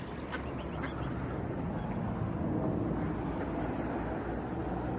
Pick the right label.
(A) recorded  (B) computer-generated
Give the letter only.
A